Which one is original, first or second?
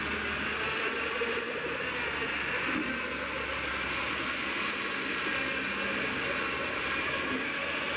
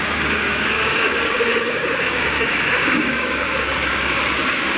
first